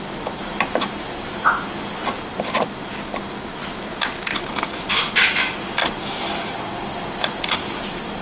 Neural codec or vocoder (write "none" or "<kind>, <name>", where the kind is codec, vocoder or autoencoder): none